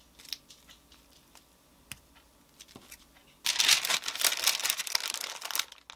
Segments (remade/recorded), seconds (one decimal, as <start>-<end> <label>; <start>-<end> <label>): 0.0-6.0 recorded